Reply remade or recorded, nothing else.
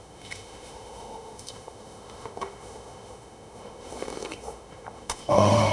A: remade